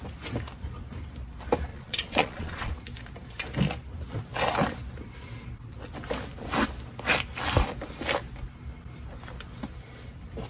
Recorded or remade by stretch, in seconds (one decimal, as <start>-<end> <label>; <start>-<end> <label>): 0.0-1.7 recorded; 1.7-2.7 remade; 2.7-10.5 recorded

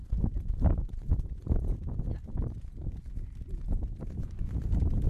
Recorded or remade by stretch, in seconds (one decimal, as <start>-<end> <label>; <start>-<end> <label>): 0.0-1.1 remade; 1.1-4.2 recorded; 4.2-5.1 remade